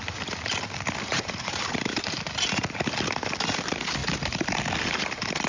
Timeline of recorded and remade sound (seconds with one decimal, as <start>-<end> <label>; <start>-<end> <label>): 0.0-1.1 recorded; 1.1-2.9 remade; 2.9-4.0 recorded; 4.0-4.7 remade; 4.7-5.5 recorded